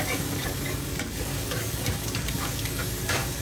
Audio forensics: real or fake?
fake